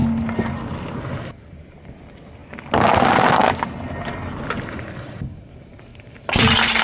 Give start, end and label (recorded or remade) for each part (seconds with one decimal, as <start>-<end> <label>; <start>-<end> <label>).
0.0-6.8 recorded